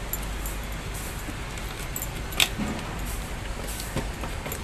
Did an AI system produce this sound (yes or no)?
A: no